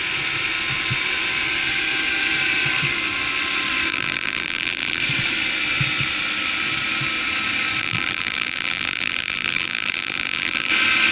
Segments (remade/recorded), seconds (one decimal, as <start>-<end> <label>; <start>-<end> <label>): 0.0-3.9 recorded; 3.9-5.0 remade; 5.0-7.8 recorded; 7.8-10.7 remade; 10.7-11.1 recorded